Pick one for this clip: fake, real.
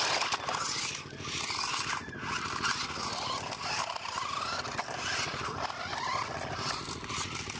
real